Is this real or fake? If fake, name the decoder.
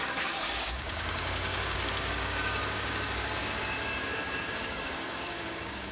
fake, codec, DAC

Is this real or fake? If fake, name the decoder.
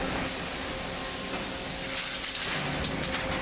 real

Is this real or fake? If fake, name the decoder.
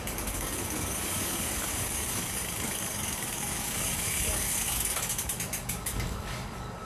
fake, codec, DAC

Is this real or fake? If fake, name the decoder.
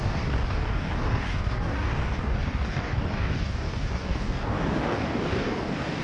fake, codec, DAC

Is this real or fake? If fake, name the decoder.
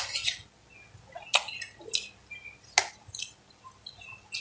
real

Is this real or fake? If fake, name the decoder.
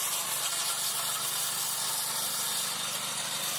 real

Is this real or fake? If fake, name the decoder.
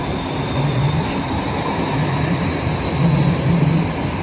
real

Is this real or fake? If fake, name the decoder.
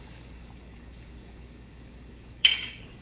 fake, codec, DAC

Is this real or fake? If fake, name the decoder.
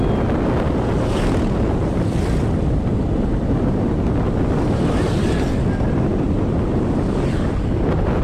real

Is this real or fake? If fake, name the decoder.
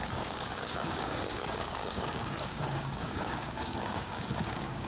fake, codec, DAC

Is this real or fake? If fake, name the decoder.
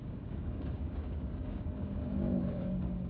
fake, codec, DAC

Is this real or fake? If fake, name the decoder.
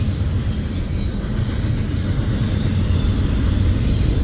real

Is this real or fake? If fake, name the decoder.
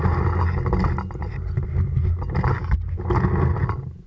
real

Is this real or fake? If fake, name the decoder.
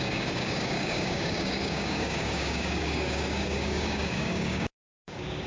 fake, codec, DAC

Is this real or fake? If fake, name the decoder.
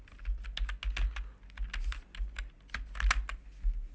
real